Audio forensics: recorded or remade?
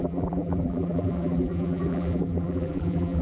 remade